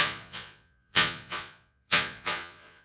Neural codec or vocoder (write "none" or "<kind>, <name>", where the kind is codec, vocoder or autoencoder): vocoder, Vocos